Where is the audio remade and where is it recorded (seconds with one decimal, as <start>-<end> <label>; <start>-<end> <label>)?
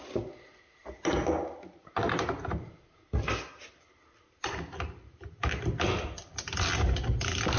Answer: 0.0-7.6 recorded